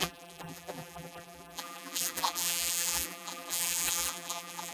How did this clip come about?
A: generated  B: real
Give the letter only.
A